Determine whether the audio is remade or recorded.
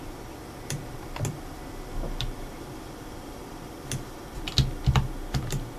recorded